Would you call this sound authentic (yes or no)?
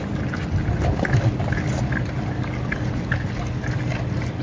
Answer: yes